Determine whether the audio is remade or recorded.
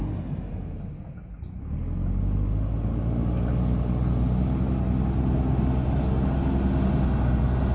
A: recorded